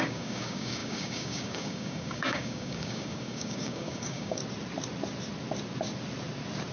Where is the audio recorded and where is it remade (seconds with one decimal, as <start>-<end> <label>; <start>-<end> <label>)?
0.0-4.4 remade; 4.4-6.7 recorded